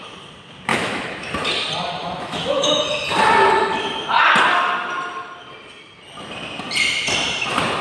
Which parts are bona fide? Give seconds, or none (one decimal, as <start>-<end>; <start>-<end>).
0.0-0.7; 1.3-2.0; 2.8-7.8